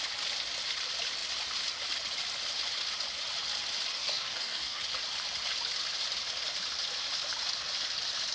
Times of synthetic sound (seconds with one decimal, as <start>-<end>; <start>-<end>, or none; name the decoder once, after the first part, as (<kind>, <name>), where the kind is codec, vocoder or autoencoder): 4.0-4.8 (codec, DAC)